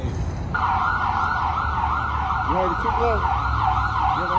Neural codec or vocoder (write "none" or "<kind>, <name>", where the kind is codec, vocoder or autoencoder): none